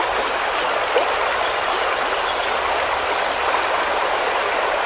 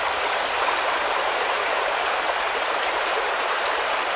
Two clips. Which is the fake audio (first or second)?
second